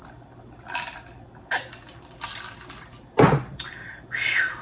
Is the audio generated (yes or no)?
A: no